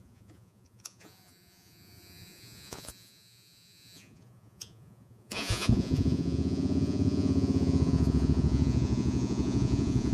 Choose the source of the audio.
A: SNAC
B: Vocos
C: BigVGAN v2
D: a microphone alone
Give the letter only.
B